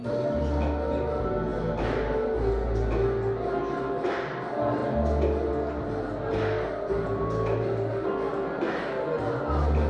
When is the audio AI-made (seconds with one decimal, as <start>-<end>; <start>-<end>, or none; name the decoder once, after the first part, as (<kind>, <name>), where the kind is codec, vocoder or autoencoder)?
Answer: none